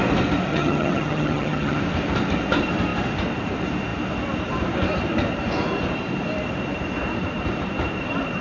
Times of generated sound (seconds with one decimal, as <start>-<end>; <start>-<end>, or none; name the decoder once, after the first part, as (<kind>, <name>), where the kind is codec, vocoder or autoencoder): 0.5-1.8 (vocoder, HiFi-GAN)